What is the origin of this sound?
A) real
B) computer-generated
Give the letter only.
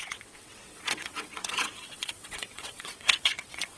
B